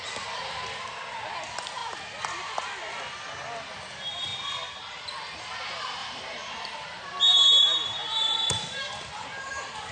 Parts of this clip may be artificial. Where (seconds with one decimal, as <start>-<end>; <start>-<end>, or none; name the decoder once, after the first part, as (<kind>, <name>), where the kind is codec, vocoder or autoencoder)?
4.3-4.8 (vocoder, BigVGAN v2); 6.0-9.9